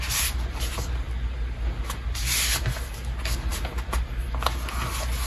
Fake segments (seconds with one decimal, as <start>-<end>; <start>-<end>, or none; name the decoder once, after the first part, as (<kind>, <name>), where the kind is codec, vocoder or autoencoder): none